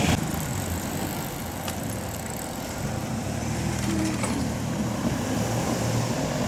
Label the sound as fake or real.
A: fake